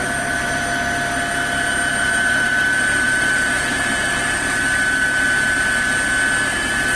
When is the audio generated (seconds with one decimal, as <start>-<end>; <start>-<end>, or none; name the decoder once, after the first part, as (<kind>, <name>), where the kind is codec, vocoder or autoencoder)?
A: 0.0-0.6 (vocoder, BigVGAN v2); 2.0-4.6